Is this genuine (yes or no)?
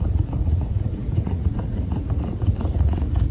no